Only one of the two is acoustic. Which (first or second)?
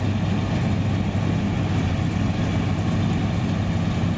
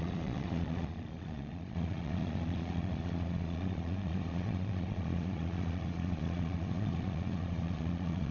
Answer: first